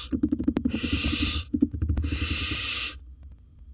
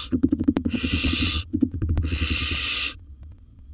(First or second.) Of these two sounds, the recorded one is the first